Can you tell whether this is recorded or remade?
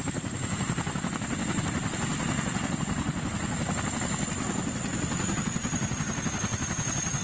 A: recorded